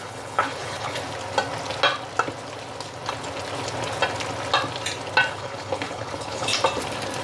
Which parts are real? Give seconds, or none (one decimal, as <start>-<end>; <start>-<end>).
1.0-5.3; 6.5-7.2